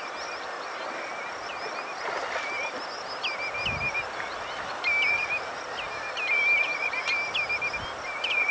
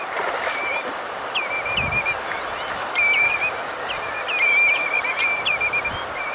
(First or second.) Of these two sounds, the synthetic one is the second